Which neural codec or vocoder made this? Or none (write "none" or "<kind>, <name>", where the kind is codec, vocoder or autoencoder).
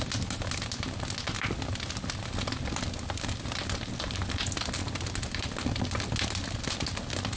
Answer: none